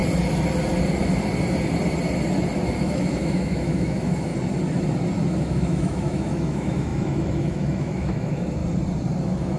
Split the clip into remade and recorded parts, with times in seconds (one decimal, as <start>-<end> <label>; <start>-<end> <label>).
0.0-2.8 recorded; 2.8-4.3 remade; 4.3-5.4 recorded; 5.4-8.6 remade; 8.6-9.2 recorded; 9.2-9.6 remade